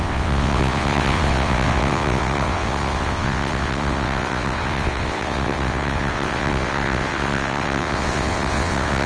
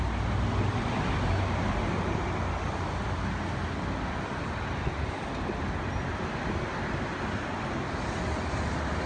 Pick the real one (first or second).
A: second